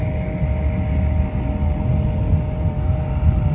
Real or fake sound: real